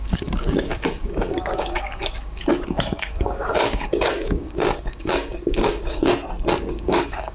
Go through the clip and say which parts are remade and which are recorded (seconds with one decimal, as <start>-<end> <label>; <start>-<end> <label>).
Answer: 0.0-6.1 remade; 6.1-6.6 recorded; 6.6-7.3 remade